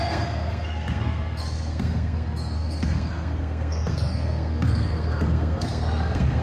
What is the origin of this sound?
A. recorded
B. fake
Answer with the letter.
B